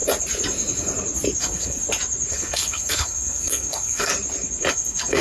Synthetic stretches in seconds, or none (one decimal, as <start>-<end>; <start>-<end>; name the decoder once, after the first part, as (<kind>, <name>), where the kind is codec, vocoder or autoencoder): 1.4-1.8 (codec, SNAC); 2.3-4.1; 4.7-5.2